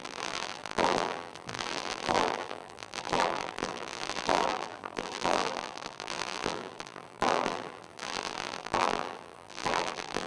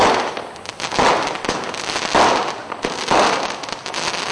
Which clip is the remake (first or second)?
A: first